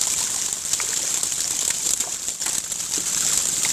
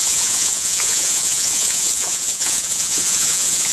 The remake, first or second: second